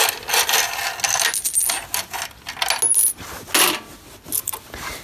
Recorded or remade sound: recorded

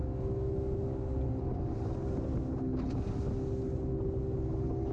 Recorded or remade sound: recorded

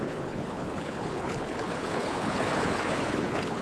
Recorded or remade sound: remade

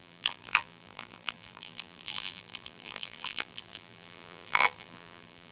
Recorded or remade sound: remade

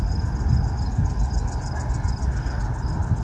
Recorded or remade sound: recorded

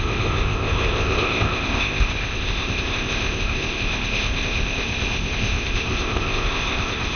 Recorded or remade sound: remade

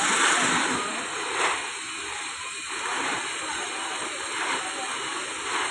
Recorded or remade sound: recorded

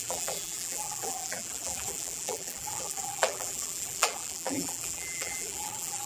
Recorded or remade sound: remade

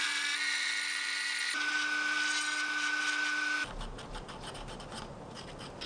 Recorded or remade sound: recorded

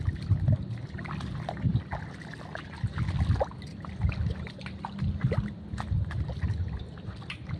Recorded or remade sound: recorded